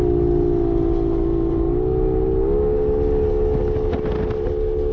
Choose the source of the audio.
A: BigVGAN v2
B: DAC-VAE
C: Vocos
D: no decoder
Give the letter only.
D